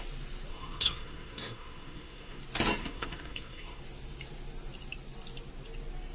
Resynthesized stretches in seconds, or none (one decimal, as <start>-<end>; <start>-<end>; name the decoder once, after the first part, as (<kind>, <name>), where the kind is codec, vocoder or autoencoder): 0.5-2.4 (codec, SNAC); 2.8-3.8